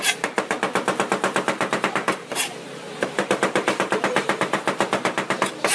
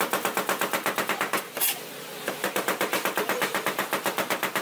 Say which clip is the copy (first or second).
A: first